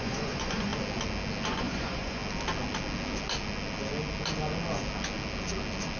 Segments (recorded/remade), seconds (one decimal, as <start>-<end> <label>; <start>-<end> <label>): 0.0-0.7 remade; 0.7-1.5 recorded; 1.5-2.2 remade; 2.2-6.0 recorded